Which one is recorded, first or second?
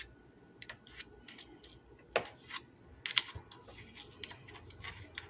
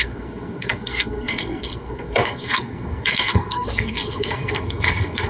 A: first